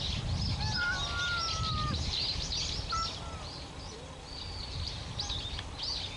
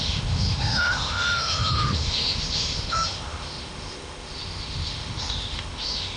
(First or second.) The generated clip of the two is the second